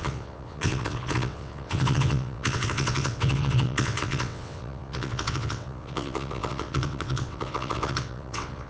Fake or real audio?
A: fake